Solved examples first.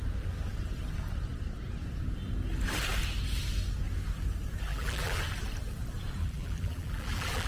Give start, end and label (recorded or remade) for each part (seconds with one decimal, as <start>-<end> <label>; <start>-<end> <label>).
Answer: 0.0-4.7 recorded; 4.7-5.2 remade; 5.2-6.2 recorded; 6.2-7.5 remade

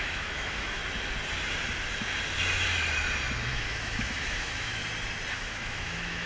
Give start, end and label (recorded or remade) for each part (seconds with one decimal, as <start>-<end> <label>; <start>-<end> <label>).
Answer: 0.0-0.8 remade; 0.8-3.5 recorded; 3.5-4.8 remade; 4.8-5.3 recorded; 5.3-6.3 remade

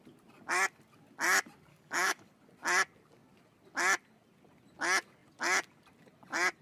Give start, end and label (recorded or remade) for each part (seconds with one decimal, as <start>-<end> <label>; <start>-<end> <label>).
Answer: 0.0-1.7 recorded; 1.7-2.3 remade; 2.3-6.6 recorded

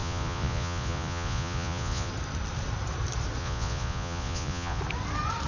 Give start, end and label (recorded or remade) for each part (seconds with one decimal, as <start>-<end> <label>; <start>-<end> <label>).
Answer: 0.0-2.1 remade; 2.1-3.4 recorded; 3.4-4.8 remade; 4.8-5.5 recorded

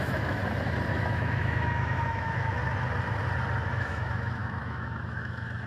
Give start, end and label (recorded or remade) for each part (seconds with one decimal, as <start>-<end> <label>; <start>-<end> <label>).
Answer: 0.0-0.4 remade; 0.4-0.9 recorded; 0.9-2.6 remade; 2.6-3.7 recorded; 3.7-5.7 remade